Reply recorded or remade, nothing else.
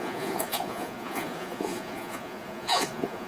remade